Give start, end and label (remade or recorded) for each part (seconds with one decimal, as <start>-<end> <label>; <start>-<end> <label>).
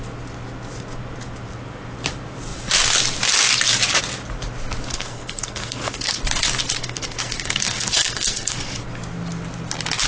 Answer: 0.0-4.9 recorded; 4.9-6.2 remade; 6.2-6.8 recorded; 6.8-8.8 remade; 8.8-10.1 recorded